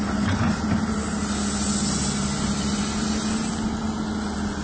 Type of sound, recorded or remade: recorded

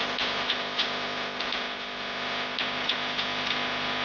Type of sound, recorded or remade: recorded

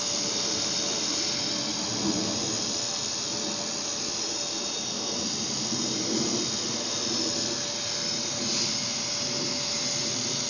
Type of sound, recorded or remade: recorded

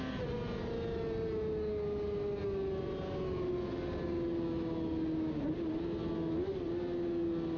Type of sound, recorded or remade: recorded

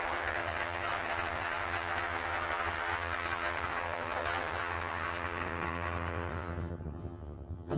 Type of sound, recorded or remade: remade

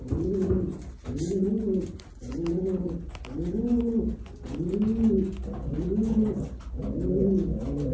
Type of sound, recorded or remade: recorded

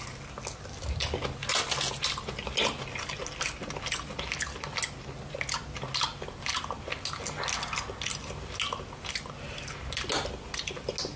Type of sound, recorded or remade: recorded